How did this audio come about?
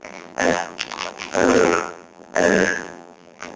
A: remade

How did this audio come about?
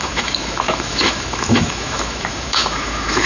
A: remade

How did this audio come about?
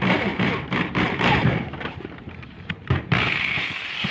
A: remade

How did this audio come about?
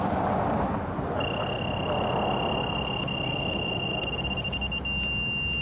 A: recorded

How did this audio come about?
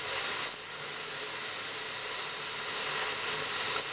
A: recorded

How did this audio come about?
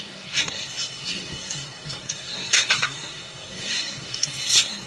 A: remade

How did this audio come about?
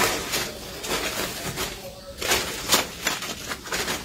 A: recorded